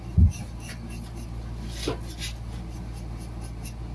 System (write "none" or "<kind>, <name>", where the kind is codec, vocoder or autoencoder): none